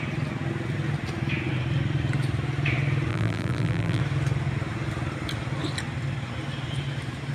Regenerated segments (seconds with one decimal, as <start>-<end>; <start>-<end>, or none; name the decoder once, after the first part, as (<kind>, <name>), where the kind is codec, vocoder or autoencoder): 3.1-4.0 (vocoder, BigVGAN v2)